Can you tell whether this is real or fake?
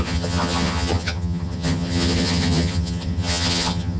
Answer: fake